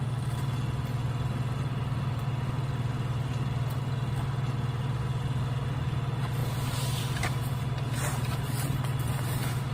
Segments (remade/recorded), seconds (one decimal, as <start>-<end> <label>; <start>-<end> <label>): 0.0-9.7 recorded